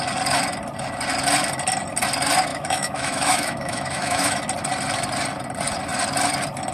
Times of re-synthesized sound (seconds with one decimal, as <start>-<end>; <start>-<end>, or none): 2.5-4.4

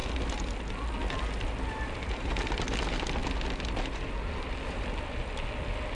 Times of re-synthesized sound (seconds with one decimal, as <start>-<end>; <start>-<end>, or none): none

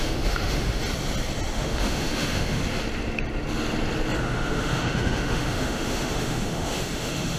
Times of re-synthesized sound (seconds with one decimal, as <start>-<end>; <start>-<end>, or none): 0.0-0.8; 1.5-2.6; 4.2-7.4

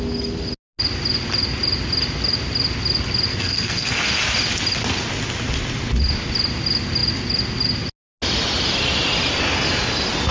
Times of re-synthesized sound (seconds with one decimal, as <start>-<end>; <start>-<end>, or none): 3.3-4.0

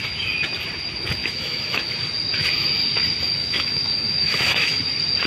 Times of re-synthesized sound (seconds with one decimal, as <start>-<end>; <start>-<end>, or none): 1.2-1.9; 3.4-4.8